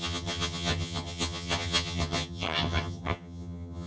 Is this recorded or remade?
remade